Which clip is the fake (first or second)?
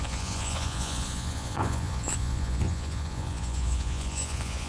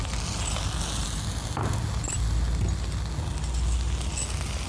first